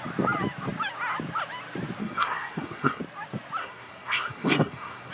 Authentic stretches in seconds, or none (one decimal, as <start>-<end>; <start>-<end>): 0.0-2.0; 3.0-3.6